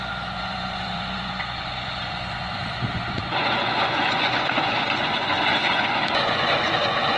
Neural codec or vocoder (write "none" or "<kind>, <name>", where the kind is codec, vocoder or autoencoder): vocoder, Vocos